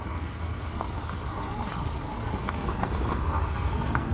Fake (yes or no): yes